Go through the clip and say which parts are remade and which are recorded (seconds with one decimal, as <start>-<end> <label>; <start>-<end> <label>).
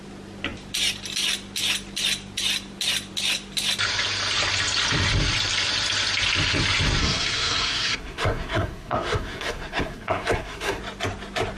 0.0-7.0 recorded; 7.0-10.8 remade; 10.8-11.6 recorded